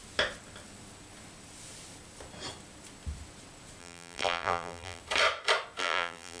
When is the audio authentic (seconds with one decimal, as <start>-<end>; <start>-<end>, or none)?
0.0-3.8; 5.0-5.8